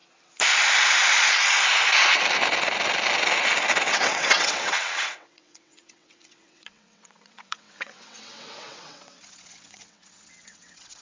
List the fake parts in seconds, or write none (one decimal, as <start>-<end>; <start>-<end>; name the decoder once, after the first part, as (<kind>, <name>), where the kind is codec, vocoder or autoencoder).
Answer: 3.9-11.0 (vocoder, WaveNeXt)